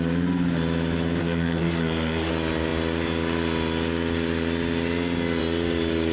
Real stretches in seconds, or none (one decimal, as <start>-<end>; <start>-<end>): 0.0-1.2; 2.3-6.1